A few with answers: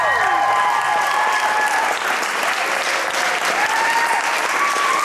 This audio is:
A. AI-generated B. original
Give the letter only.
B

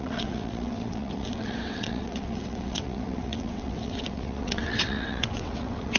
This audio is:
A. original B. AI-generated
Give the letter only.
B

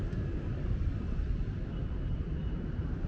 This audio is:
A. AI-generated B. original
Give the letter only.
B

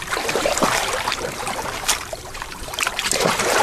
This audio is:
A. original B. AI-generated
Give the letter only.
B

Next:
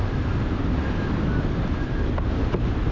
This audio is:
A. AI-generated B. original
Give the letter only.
B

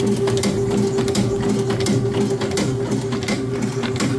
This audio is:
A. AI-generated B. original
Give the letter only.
B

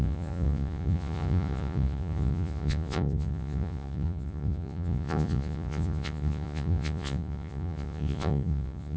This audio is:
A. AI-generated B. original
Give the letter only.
A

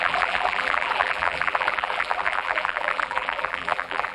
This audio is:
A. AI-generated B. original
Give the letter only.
A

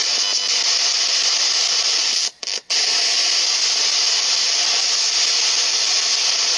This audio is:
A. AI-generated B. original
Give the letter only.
B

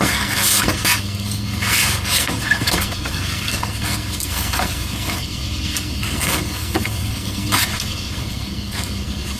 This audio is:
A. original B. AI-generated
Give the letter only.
B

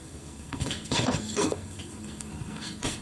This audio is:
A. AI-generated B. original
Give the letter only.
A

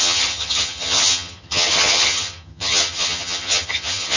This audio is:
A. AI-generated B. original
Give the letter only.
A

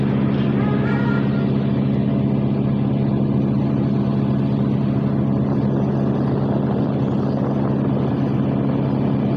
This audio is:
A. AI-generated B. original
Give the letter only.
B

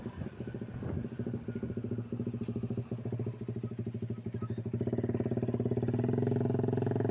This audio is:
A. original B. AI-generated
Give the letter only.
A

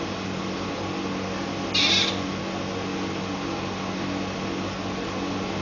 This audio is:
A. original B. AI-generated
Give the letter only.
A